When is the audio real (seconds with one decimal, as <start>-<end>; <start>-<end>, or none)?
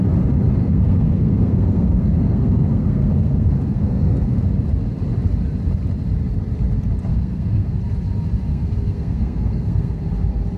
0.0-0.6; 4.4-7.1; 7.8-8.5; 10.0-10.6